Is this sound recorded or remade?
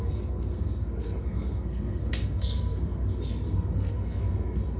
remade